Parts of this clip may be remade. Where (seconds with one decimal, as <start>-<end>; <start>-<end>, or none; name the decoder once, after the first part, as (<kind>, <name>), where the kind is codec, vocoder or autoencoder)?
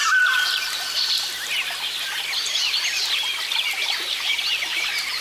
0.0-5.2 (vocoder, BigVGAN v2)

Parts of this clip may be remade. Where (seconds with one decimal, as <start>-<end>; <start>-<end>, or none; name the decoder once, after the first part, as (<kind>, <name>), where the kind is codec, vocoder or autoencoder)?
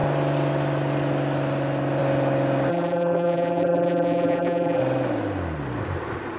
2.7-4.8 (vocoder, BigVGAN v2)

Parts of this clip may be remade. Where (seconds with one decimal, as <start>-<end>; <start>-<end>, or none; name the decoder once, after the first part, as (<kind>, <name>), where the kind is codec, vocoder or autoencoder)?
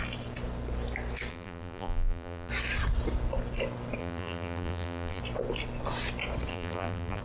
1.3-2.5 (vocoder, BigVGAN v2); 4.0-5.2; 6.5-7.2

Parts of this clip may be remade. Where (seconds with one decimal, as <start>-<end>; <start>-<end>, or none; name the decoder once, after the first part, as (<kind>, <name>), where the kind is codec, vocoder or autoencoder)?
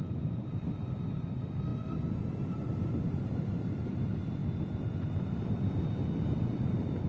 0.0-1.7 (vocoder, BigVGAN v2); 3.0-4.4; 6.5-7.1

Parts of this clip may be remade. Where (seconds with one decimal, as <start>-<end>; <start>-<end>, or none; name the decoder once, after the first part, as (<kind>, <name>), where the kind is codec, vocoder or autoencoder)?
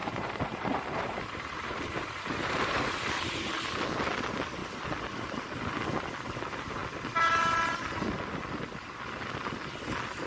0.0-3.1 (vocoder, BigVGAN v2)